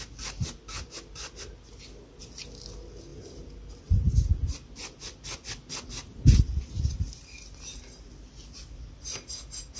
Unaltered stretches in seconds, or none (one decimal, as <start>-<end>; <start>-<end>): 0.0-9.8